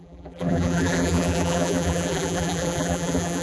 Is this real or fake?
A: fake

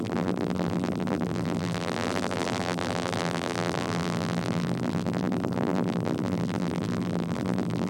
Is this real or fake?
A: fake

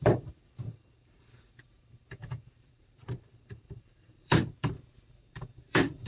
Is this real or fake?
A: fake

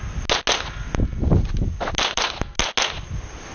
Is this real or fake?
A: real